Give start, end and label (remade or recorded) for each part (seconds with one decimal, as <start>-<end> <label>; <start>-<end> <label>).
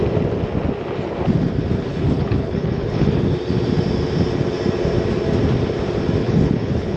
0.0-1.9 recorded; 1.9-3.2 remade; 3.2-6.2 recorded; 6.2-7.0 remade